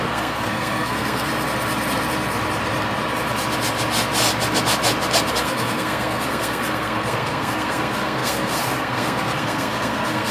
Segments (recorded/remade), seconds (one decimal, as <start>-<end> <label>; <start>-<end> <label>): 0.0-1.3 remade; 1.3-5.3 recorded; 5.3-10.3 remade